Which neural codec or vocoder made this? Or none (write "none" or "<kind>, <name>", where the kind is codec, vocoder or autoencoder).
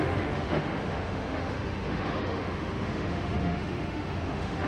autoencoder, DAC-VAE